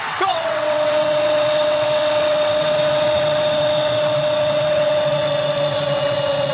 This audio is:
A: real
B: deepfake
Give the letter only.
B